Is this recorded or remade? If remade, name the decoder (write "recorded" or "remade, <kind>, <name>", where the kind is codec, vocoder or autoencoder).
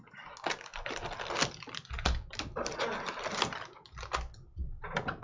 recorded